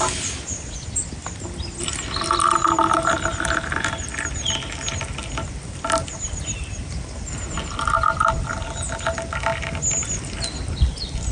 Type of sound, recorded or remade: recorded